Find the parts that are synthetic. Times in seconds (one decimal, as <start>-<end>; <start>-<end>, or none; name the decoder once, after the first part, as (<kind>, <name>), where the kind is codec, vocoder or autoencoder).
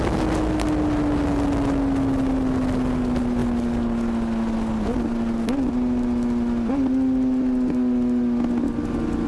none